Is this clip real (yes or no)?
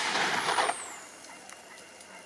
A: yes